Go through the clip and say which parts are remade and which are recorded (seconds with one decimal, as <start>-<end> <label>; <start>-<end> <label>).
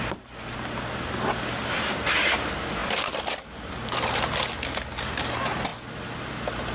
0.0-6.7 recorded